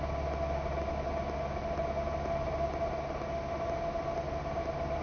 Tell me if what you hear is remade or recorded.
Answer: recorded